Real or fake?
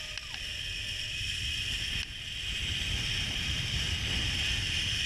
real